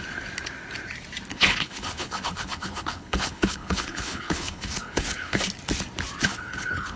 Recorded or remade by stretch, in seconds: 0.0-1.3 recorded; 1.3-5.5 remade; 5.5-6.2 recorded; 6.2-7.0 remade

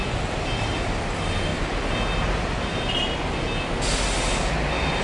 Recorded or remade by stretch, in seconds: 0.0-5.0 recorded

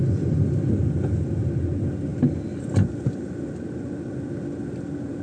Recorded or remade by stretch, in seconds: 0.0-5.2 recorded

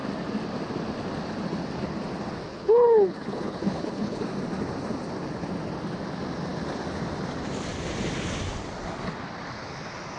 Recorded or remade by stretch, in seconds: 0.0-2.5 recorded; 2.5-4.2 remade; 4.2-10.2 recorded

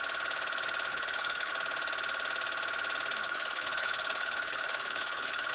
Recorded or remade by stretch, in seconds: 0.0-0.9 recorded; 0.9-1.5 remade; 1.5-3.2 recorded; 3.2-5.5 remade

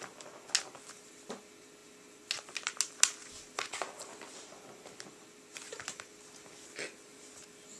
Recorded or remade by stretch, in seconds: 0.0-7.8 recorded